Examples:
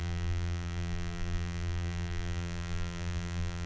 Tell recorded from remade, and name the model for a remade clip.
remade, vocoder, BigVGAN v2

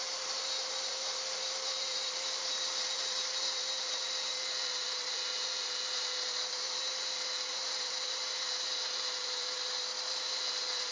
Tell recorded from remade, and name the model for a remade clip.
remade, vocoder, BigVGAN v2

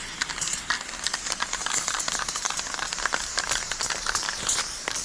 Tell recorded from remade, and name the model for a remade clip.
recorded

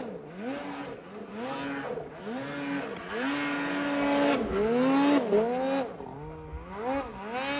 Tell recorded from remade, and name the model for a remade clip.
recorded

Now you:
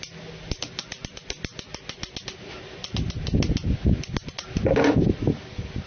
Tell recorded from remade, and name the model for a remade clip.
recorded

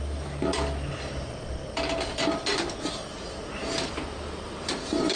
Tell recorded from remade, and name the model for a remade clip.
recorded